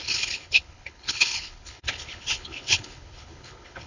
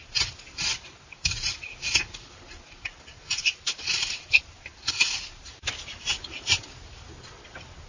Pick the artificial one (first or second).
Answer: first